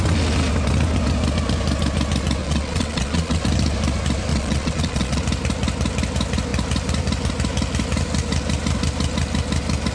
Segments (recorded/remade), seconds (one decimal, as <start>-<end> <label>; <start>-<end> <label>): 0.0-2.4 recorded; 2.4-3.4 remade; 3.4-4.3 recorded; 4.3-5.2 remade; 5.2-9.9 recorded

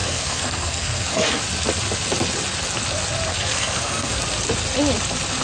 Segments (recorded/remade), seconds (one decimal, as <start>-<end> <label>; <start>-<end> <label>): 0.0-1.4 remade; 1.4-3.3 recorded; 3.3-4.2 remade; 4.2-5.4 recorded

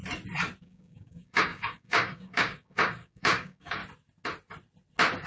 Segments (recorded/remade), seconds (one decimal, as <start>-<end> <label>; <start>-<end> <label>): 0.0-0.6 recorded; 0.6-3.8 remade; 3.8-5.3 recorded

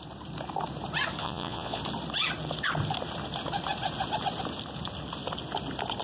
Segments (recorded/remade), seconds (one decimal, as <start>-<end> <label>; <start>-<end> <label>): 0.0-1.2 recorded; 1.2-1.8 remade; 1.8-6.0 recorded

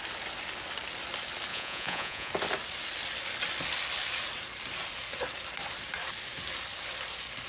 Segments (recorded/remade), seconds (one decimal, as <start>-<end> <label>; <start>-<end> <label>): 0.0-1.5 recorded; 1.5-2.3 remade; 2.3-7.5 recorded

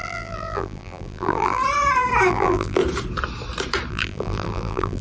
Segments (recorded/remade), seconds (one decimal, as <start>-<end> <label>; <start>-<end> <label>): 0.0-1.6 remade; 1.6-2.3 recorded; 2.3-2.8 remade; 2.8-3.9 recorded; 3.9-5.0 remade